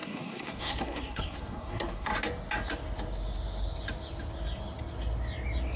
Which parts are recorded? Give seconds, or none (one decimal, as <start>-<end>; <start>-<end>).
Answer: 2.1-5.8